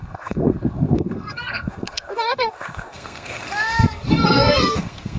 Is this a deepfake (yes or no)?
yes